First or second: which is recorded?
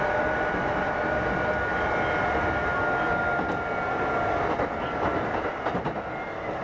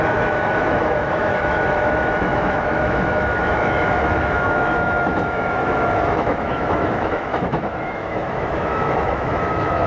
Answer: first